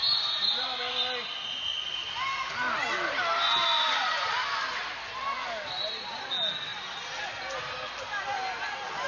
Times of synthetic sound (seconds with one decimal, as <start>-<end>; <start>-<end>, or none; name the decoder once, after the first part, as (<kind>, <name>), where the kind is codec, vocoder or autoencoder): 1.7-3.3 (vocoder, BigVGAN v2)